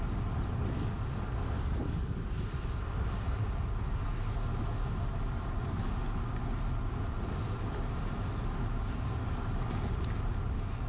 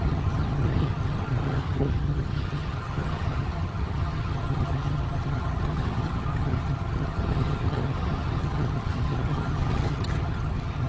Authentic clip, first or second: first